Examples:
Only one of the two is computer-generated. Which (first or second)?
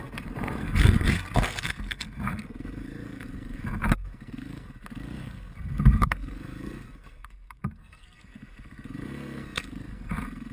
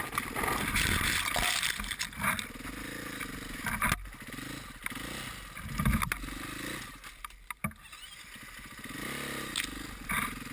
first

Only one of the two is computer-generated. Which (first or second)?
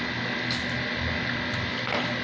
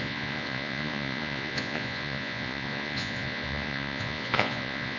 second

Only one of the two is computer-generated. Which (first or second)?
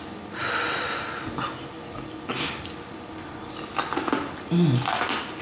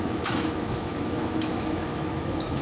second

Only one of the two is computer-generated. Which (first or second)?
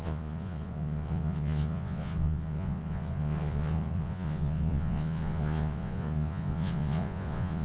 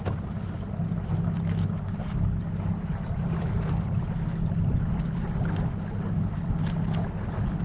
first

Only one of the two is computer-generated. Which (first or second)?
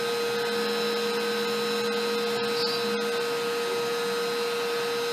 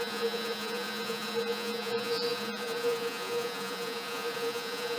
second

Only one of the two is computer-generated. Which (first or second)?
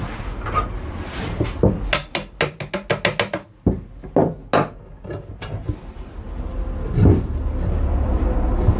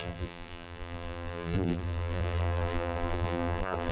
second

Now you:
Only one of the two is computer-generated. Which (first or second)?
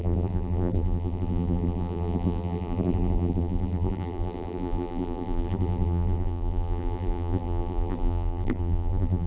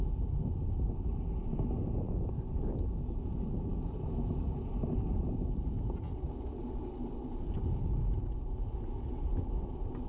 first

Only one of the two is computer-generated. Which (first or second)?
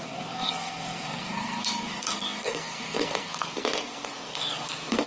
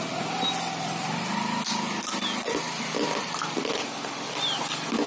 first